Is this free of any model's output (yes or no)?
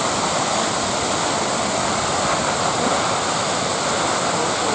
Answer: yes